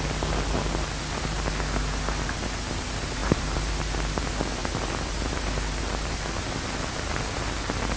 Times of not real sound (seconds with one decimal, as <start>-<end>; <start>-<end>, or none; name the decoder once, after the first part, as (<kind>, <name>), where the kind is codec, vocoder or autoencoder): 3.2-3.7 (vocoder, BigVGAN v2); 4.6-5.8